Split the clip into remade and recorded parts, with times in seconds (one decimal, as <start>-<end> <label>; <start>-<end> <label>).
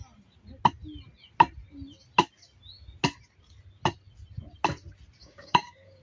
0.0-5.2 recorded; 5.2-6.0 remade